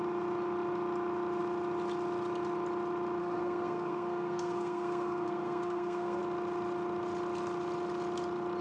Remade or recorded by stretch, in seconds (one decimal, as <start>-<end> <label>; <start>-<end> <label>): 0.0-3.2 recorded; 3.2-6.2 remade; 6.2-8.6 recorded